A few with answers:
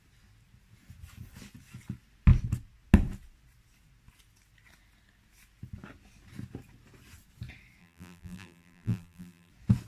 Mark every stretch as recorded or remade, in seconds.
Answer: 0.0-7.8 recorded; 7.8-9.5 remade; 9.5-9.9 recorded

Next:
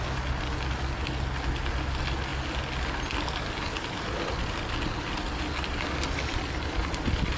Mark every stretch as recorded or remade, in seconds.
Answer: 0.0-7.4 recorded

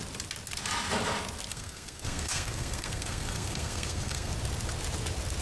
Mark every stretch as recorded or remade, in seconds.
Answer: 0.0-1.5 recorded; 1.5-4.3 remade; 4.3-5.4 recorded

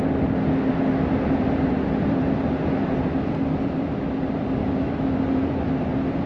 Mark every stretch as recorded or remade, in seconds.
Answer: 0.0-4.6 recorded; 4.6-5.2 remade; 5.2-6.3 recorded

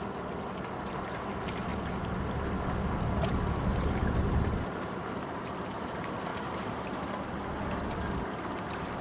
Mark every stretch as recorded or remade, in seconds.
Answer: 0.0-3.7 recorded; 3.7-5.0 remade; 5.0-6.3 recorded; 6.3-7.3 remade; 7.3-9.0 recorded